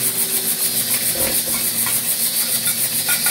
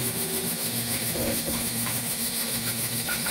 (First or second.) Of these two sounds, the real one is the first